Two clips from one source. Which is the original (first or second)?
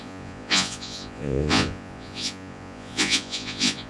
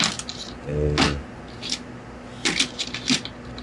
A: second